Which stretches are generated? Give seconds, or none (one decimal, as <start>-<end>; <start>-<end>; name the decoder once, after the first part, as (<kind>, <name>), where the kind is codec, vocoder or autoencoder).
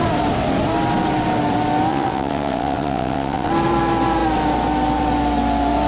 1.9-3.5 (vocoder, WaveNeXt)